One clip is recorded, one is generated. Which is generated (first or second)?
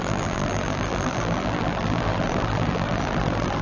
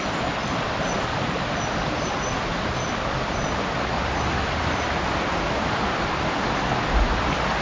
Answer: first